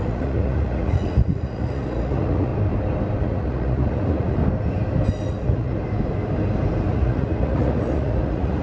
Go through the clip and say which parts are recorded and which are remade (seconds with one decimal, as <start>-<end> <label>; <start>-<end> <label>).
0.0-2.5 remade; 2.5-3.2 recorded; 3.2-4.4 remade; 4.4-5.3 recorded; 5.3-5.8 remade; 5.8-6.9 recorded; 6.9-8.6 remade